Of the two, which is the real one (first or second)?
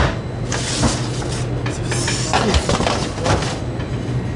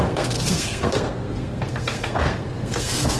first